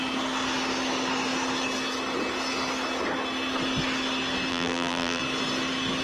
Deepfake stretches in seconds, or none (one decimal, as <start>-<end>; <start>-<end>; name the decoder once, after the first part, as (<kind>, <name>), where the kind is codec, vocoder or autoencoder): 4.5-5.2 (vocoder, BigVGAN v2)